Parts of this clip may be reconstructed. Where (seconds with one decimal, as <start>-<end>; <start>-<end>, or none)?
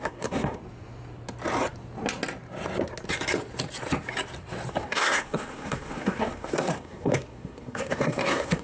0.0-0.6; 4.7-8.6